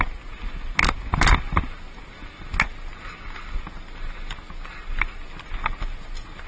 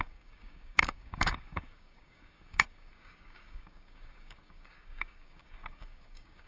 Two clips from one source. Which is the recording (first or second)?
first